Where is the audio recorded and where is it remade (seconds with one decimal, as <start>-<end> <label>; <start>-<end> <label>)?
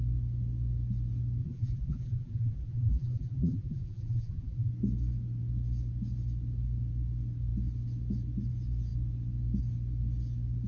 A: 0.0-1.4 recorded; 1.4-4.7 remade; 4.7-10.7 recorded